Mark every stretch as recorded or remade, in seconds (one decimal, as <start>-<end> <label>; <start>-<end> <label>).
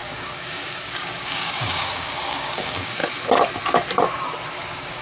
0.0-3.0 remade; 3.0-4.6 recorded; 4.6-5.0 remade